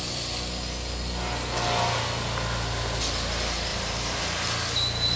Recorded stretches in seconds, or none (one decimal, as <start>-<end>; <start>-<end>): 0.0-3.7; 4.4-5.2